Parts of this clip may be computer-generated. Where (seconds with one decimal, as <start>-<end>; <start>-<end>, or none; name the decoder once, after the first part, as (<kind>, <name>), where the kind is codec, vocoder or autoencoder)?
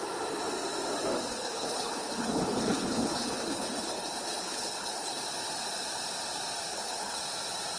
1.3-5.2 (codec, HILCodec); 6.7-7.2